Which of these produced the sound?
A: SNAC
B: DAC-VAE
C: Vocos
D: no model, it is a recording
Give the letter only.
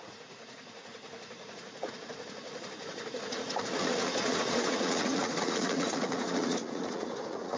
C